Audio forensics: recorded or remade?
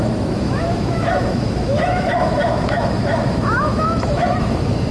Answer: remade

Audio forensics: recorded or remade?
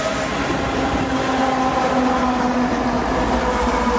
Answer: recorded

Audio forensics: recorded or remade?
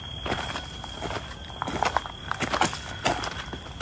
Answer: recorded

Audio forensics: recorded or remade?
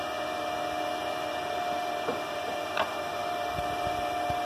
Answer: recorded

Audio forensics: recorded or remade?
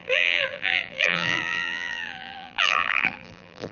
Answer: remade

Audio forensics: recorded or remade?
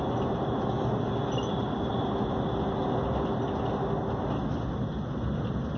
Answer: recorded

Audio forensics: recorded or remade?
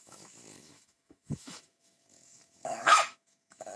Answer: remade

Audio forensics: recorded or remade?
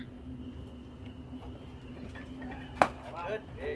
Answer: recorded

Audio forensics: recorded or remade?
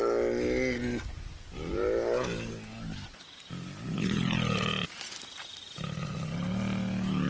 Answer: recorded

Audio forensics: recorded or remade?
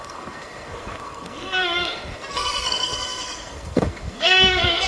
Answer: remade